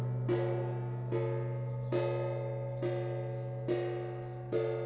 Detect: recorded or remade recorded